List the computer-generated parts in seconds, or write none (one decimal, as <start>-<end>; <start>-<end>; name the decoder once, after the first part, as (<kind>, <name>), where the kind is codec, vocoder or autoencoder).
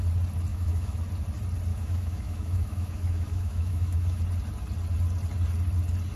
0.5-1.0 (autoencoder, DAC-VAE); 1.7-4.2